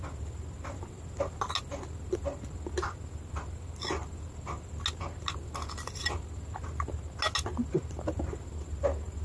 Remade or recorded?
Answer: recorded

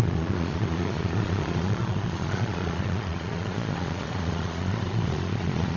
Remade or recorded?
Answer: remade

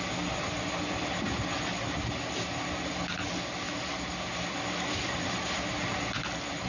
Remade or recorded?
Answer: recorded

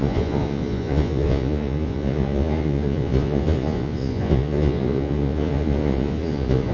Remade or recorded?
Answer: remade